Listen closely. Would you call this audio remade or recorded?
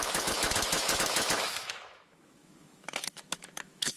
remade